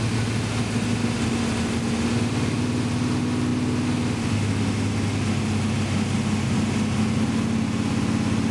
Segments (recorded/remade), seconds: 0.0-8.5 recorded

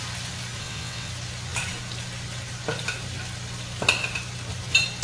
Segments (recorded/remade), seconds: 0.0-0.6 recorded; 0.6-1.1 remade; 1.1-5.0 recorded

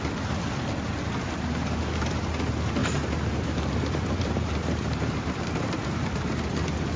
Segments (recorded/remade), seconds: 0.0-2.8 recorded; 2.8-6.3 remade; 6.3-7.0 recorded

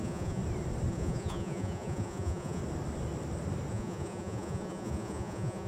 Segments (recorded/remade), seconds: 0.0-0.4 remade; 0.4-0.9 recorded; 0.9-2.6 remade; 2.6-3.7 recorded; 3.7-5.7 remade

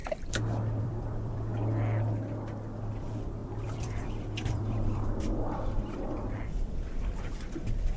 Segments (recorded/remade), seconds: 0.0-0.8 recorded; 0.8-1.5 remade; 1.5-2.9 recorded; 2.9-8.0 remade

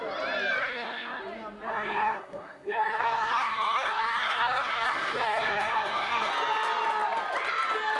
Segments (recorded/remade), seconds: 0.0-0.6 recorded; 0.6-1.2 remade; 1.2-1.7 recorded; 1.7-6.3 remade; 6.3-8.0 recorded

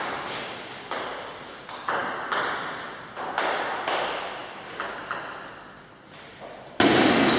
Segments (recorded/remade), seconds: 0.0-7.4 recorded

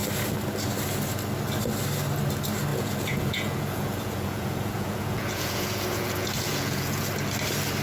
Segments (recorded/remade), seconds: 0.0-2.7 recorded; 2.7-7.0 remade; 7.0-7.8 recorded